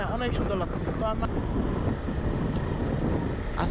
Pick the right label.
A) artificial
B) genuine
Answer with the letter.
B